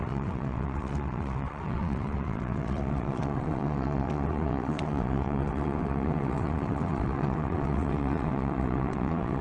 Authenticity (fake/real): fake